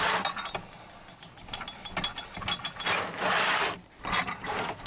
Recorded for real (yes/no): yes